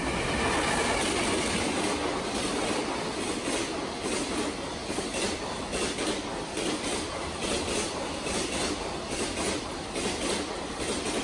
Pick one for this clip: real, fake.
real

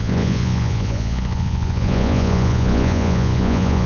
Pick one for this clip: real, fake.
fake